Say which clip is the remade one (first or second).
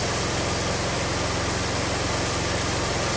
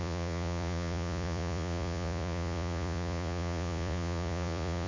second